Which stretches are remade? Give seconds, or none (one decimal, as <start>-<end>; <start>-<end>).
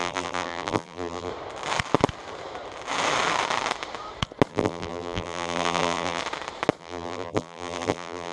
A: 0.0-1.3; 4.5-6.2; 6.8-8.3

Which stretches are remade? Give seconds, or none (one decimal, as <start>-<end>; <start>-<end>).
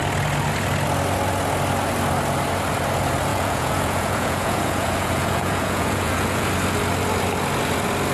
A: 3.3-6.5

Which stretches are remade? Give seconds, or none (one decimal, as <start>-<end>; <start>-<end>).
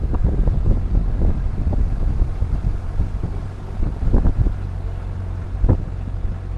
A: none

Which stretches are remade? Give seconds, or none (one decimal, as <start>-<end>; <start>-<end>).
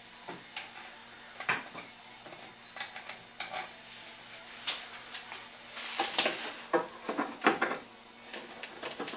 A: none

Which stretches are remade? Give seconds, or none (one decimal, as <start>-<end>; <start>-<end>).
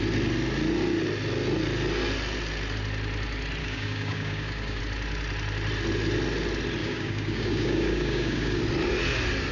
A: 3.6-4.8; 6.8-8.6